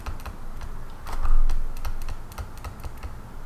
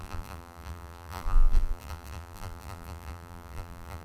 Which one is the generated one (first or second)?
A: second